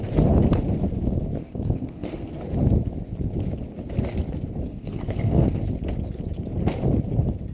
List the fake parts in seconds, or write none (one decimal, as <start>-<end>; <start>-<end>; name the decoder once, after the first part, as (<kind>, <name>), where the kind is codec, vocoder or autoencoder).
1.4-2.3 (codec, SNAC); 4.7-5.6